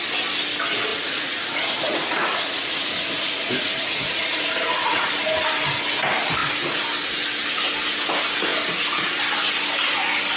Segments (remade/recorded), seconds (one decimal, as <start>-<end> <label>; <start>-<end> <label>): 0.0-0.9 recorded; 0.9-5.1 remade; 5.1-10.4 recorded